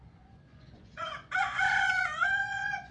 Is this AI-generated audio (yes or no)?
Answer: yes